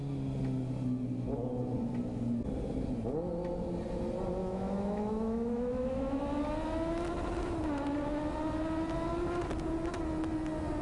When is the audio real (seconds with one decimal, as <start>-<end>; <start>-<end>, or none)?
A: 0.0-4.4; 6.2-10.8